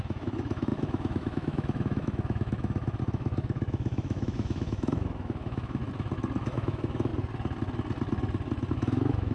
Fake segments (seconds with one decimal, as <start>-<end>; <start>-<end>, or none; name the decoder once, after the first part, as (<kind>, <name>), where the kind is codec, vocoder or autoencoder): 0.0-5.8 (autoencoder, DAC-VAE); 6.4-7.1; 8.7-9.3